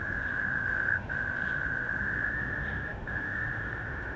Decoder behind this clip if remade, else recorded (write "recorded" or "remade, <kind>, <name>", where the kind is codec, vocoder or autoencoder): remade, autoencoder, DAC-VAE